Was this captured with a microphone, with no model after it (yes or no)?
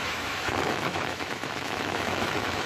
no